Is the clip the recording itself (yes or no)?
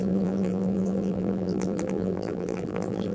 no